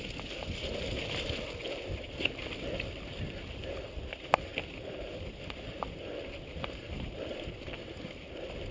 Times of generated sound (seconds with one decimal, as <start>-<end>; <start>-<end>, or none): none